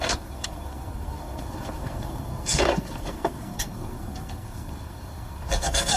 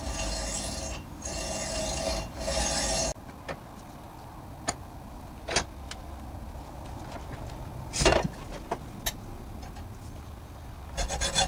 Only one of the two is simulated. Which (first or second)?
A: first